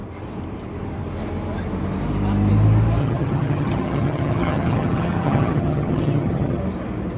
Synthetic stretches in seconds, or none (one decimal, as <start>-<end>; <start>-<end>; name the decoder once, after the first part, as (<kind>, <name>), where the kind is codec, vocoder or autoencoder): 3.0-6.6 (vocoder, HiFi-GAN)

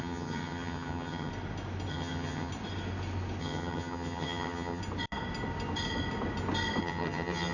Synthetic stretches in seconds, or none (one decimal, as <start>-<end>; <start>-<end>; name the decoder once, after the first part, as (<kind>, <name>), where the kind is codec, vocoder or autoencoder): 0.0-1.3 (vocoder, HiFi-GAN); 1.9-2.5; 3.4-4.8; 6.8-7.5

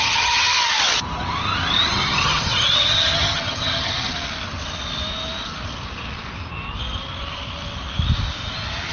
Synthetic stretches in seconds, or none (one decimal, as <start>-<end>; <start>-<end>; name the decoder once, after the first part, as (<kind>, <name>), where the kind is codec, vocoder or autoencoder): 0.0-0.5 (vocoder, HiFi-GAN); 1.9-4.1

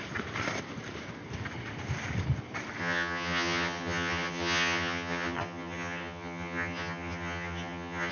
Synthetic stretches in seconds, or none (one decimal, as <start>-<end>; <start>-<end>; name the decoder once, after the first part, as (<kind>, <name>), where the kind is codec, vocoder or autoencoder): 2.8-8.1 (vocoder, HiFi-GAN)

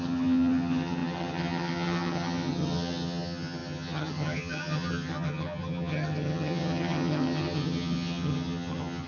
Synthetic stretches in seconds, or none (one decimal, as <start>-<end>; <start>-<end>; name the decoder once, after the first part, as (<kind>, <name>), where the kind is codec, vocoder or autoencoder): 0.0-9.1 (vocoder, HiFi-GAN)

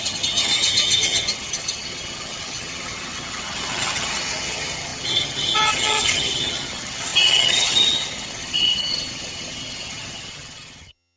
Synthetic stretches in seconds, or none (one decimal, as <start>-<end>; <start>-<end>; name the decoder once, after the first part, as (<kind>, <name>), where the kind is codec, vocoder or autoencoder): 0.0-11.2 (vocoder, HiFi-GAN)

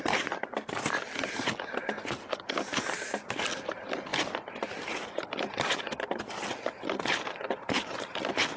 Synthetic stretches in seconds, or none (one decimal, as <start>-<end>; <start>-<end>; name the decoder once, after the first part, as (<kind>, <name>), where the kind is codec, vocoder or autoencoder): none